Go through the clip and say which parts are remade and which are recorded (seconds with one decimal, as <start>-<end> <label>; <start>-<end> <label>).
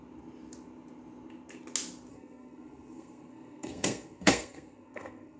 0.0-2.1 recorded; 2.1-5.4 remade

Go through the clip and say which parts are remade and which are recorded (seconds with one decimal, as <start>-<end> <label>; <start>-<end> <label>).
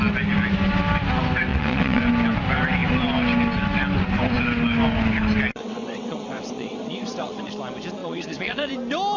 0.0-1.5 recorded; 1.5-2.0 remade; 2.0-5.5 recorded; 5.5-7.5 remade; 7.5-8.0 recorded; 8.0-8.7 remade; 8.7-9.2 recorded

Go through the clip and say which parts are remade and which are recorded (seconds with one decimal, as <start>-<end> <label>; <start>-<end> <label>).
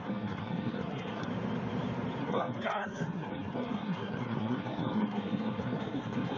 0.0-1.3 remade; 1.3-2.2 recorded; 2.2-6.4 remade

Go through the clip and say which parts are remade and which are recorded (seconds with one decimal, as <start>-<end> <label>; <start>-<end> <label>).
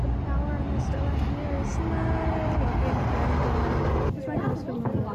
0.0-5.1 recorded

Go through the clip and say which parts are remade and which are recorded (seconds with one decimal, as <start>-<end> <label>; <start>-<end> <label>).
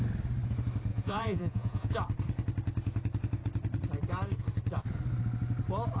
0.0-0.9 recorded; 0.9-1.9 remade; 1.9-6.0 recorded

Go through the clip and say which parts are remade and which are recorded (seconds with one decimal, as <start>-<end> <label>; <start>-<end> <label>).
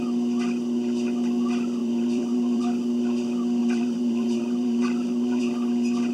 0.0-1.8 recorded; 1.8-2.6 remade; 2.6-3.6 recorded; 3.6-5.4 remade; 5.4-6.1 recorded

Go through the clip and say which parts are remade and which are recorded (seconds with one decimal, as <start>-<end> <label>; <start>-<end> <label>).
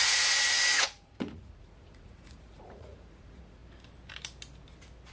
0.0-3.6 remade; 3.6-5.1 recorded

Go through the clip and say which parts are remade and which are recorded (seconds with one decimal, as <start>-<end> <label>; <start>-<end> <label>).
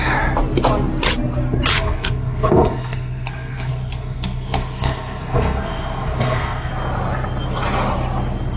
0.0-1.7 recorded; 1.7-6.7 remade; 6.7-8.6 recorded